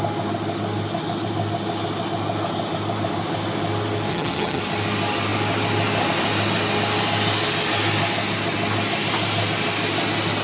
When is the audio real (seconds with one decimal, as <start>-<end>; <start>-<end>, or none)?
0.0-4.1; 4.6-10.4